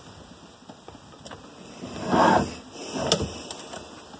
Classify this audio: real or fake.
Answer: real